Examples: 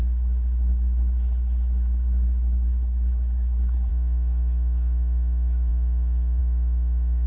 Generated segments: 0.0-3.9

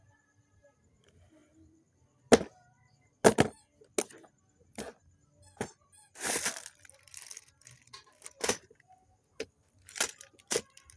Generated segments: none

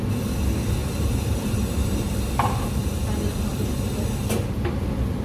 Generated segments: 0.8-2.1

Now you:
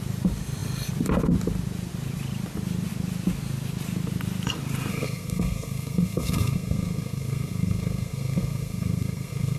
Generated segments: 4.9-9.6